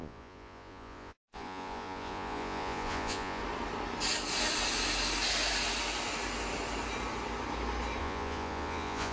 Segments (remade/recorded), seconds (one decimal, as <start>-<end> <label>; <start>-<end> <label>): 0.0-3.4 remade; 3.4-8.0 recorded; 8.0-9.1 remade